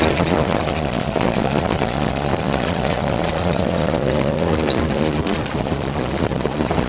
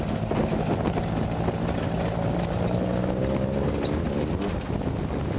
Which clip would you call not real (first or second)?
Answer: first